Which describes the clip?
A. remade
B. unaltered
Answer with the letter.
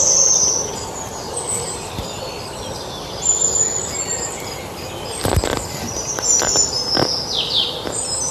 B